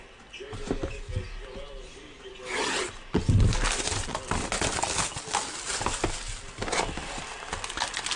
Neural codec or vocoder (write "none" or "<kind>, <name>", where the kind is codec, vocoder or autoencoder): none